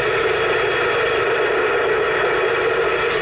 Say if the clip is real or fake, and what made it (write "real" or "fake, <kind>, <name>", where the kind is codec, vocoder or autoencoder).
real